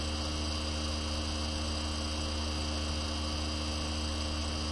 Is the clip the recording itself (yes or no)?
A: yes